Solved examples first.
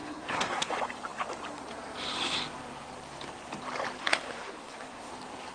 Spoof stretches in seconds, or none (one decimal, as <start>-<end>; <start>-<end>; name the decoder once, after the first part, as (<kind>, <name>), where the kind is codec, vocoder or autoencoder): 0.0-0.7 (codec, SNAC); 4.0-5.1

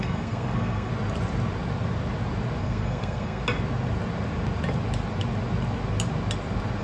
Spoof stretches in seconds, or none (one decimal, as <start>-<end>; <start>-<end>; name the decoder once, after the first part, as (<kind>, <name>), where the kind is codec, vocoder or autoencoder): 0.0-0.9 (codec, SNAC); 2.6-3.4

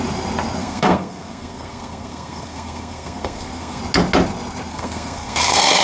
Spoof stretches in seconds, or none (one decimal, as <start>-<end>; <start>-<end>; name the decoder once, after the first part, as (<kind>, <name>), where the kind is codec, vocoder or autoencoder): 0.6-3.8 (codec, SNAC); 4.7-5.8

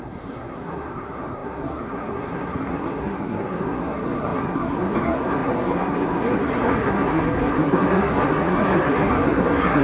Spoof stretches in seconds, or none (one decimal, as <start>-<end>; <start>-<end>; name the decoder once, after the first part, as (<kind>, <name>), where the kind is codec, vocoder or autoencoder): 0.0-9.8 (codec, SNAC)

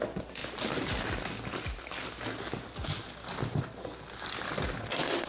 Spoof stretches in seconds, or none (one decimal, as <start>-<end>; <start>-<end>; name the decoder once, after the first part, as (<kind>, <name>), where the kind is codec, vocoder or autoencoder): none

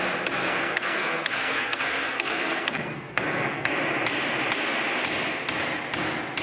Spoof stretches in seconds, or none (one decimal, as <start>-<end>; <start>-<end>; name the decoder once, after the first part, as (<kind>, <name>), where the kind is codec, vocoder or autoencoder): 0.4-3.7 (codec, SNAC)